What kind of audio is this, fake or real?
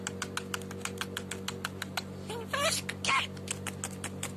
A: real